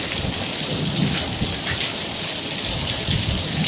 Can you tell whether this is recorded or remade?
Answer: recorded